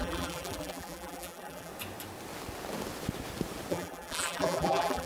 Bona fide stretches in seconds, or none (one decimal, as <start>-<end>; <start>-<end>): 1.7-3.7

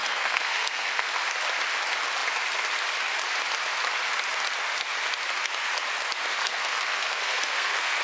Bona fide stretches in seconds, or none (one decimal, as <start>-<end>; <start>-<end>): 1.2-6.3

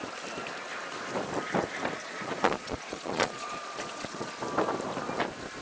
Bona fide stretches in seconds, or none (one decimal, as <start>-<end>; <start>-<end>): 0.0-2.0; 4.3-5.6